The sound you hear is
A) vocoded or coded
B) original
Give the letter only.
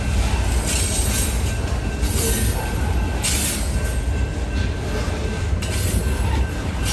B